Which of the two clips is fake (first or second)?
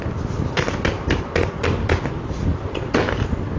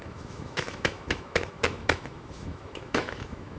second